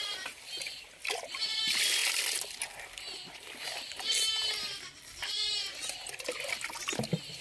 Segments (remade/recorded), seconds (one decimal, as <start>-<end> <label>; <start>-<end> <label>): 0.0-7.4 recorded